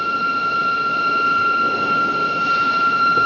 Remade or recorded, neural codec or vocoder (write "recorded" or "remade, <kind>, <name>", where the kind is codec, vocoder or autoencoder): remade, vocoder, WaveNeXt